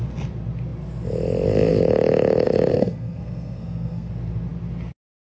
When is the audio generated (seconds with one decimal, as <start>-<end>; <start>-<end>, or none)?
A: 2.7-4.1